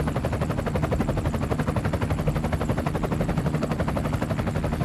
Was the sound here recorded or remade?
recorded